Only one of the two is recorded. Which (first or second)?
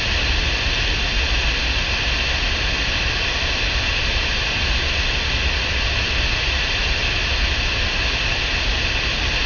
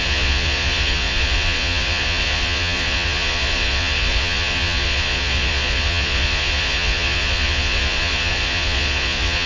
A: first